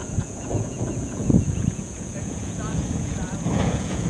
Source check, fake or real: fake